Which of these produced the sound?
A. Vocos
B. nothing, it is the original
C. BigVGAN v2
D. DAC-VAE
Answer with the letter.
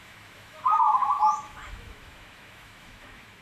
D